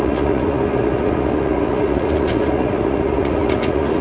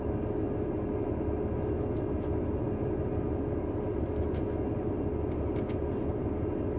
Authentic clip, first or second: second